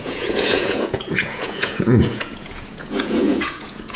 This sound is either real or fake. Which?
fake